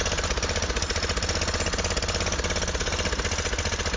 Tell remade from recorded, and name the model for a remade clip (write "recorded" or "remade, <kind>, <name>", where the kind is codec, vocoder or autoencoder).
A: recorded